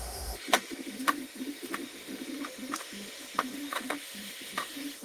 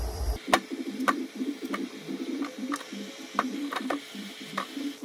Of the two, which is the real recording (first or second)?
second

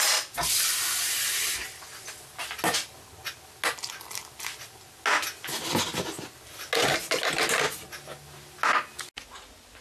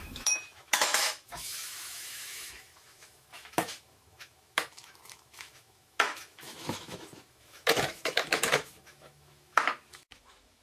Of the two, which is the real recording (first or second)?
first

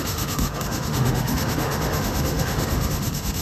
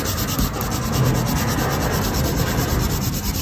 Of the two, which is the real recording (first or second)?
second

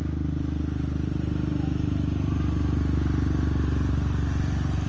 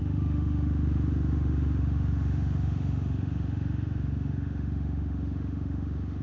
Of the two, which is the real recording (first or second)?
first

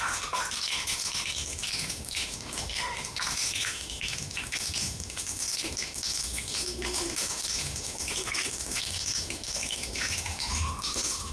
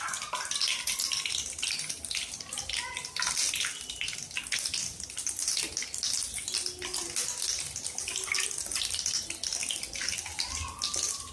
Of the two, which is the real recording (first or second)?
second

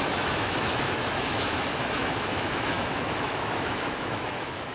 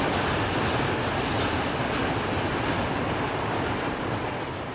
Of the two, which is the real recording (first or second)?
second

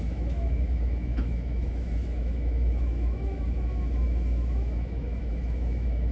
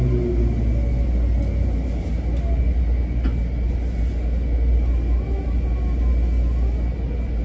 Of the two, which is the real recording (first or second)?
second